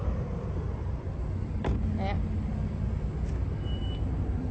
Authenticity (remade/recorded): recorded